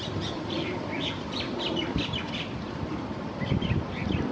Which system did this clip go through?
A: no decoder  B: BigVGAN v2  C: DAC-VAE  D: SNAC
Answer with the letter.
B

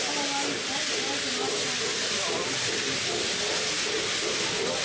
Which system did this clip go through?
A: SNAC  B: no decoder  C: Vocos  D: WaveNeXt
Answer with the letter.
B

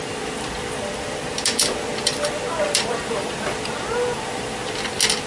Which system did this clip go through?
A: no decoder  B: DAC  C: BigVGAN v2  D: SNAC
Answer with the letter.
A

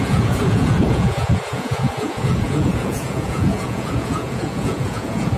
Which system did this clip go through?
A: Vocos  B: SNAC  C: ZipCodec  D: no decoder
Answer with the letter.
A